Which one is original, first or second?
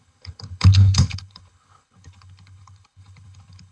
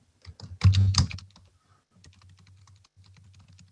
second